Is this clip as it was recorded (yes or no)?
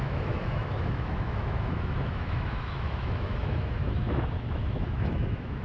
no